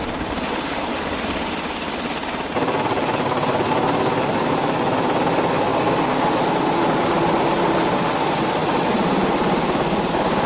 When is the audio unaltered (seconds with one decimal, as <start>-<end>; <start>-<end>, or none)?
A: 0.0-10.5